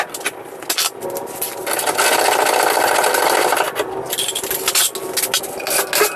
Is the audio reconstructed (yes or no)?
no